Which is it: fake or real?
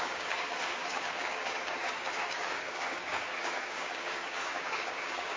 fake